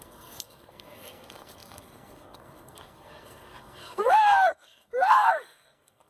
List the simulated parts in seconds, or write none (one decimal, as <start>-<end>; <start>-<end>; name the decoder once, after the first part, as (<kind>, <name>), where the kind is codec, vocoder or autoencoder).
0.0-6.1 (codec, SNAC)